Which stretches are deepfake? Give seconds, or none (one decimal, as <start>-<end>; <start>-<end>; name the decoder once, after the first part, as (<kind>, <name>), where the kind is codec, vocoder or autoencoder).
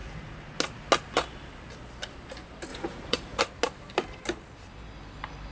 2.7-3.4 (vocoder, Vocos)